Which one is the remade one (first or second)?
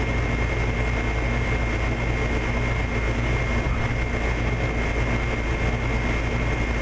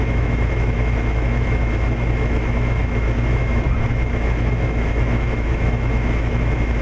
second